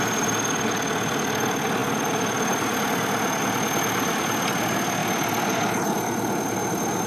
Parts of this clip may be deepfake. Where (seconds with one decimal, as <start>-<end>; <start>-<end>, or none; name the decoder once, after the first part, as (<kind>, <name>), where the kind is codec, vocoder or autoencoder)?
none